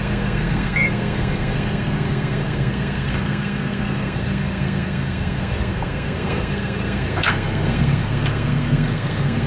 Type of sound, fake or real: fake